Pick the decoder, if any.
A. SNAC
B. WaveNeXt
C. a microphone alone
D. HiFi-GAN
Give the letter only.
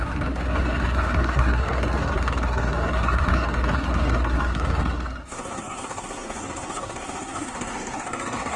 A